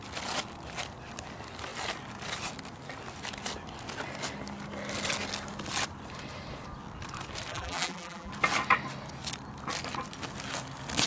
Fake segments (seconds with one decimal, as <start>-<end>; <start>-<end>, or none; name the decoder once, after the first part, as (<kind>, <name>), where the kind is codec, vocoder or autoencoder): 7.5-8.3 (vocoder, BigVGAN v2)